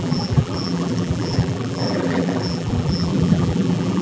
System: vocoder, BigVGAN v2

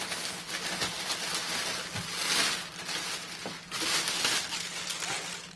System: none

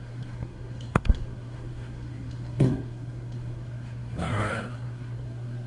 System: codec, SNAC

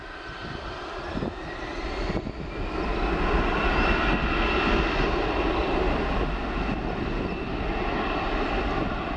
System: none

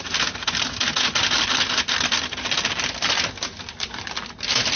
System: none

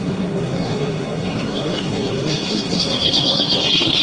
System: codec, SNAC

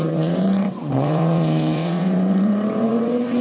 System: vocoder, WaveNeXt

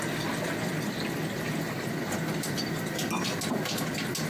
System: none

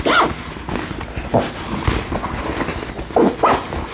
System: none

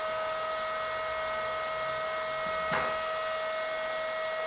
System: none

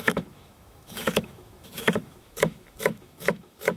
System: autoencoder, DAC-VAE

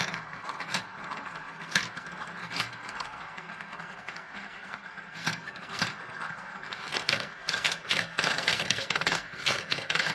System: codec, SNAC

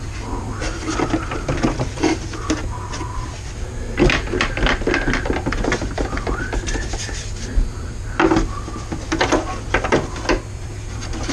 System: none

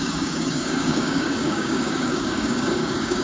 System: codec, DAC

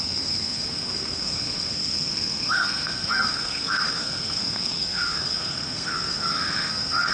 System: codec, SNAC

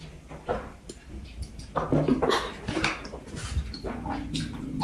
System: none